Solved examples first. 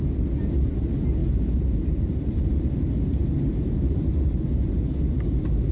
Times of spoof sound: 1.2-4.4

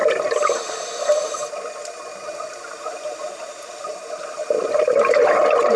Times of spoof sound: 0.0-0.7; 2.1-5.3

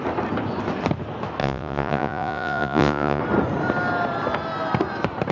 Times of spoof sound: 1.4-3.2